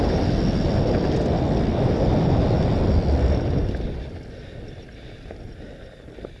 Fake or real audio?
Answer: real